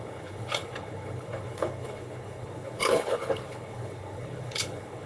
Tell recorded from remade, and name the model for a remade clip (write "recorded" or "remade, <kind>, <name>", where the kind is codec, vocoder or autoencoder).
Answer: remade, codec, HILCodec